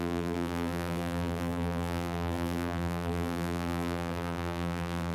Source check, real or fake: fake